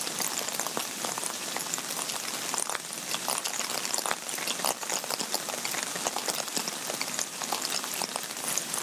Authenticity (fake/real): fake